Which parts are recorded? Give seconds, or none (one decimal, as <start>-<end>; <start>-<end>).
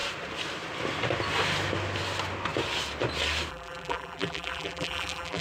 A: 0.0-3.5